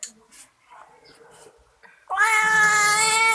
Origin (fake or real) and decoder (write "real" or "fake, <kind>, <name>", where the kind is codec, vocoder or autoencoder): real